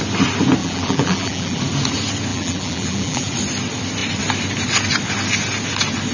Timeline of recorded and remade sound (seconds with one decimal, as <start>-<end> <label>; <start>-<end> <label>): 0.0-0.6 recorded; 0.6-1.6 remade; 1.6-2.3 recorded; 2.3-3.3 remade; 3.3-6.1 recorded